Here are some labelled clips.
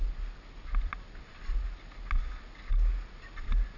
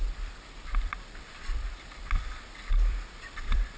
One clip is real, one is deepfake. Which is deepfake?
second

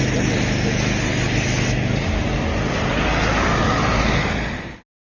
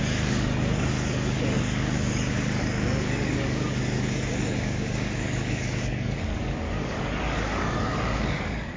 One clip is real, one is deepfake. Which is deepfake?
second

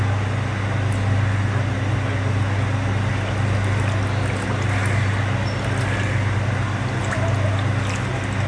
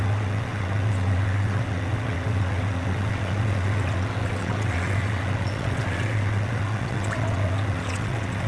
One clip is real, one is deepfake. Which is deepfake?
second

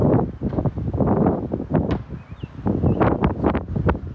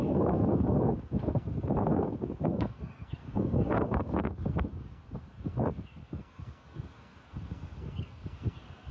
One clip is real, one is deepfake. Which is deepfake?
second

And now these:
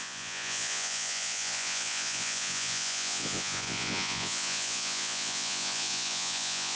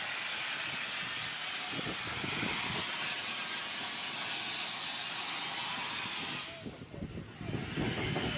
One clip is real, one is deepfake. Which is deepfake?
first